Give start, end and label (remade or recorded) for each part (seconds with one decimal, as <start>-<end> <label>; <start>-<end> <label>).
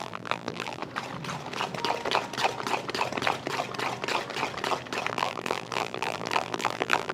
0.0-0.8 remade; 0.8-5.1 recorded; 5.1-7.1 remade